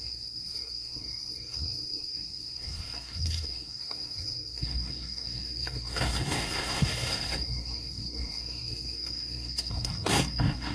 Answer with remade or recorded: remade